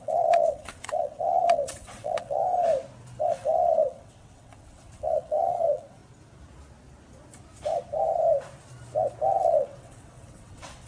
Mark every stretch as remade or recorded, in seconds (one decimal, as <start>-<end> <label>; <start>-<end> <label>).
0.0-2.4 remade; 2.4-3.2 recorded; 3.2-6.0 remade; 6.0-9.4 recorded; 9.4-10.9 remade